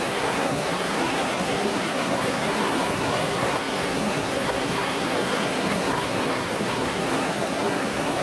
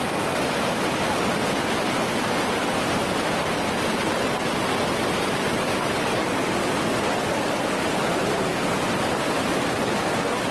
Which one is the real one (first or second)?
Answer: second